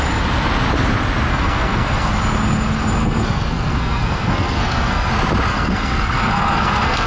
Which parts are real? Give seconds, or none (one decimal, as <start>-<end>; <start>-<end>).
0.0-1.3; 2.1-3.0; 5.1-5.5